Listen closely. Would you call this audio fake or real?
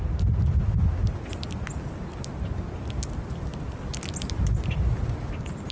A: real